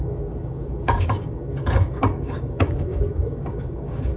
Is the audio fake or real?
fake